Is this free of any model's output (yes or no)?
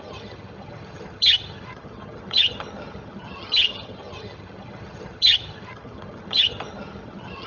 no